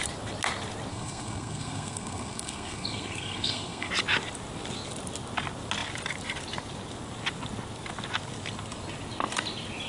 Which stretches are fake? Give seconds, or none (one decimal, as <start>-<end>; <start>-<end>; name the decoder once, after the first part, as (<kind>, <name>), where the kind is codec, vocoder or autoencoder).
0.9-3.9 (codec, SNAC)